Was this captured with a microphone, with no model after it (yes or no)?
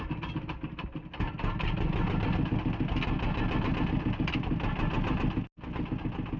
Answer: yes